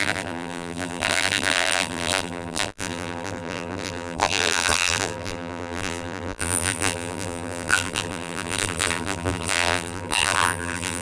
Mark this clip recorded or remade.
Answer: remade